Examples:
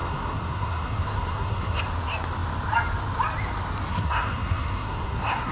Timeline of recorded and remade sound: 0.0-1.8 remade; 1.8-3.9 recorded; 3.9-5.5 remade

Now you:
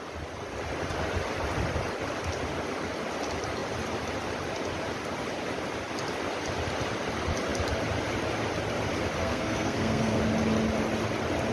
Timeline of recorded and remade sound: 0.0-9.2 recorded; 9.2-10.2 remade; 10.2-11.5 recorded

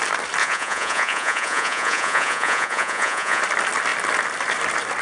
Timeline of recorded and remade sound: 0.0-0.4 recorded; 0.4-3.4 remade; 3.4-5.0 recorded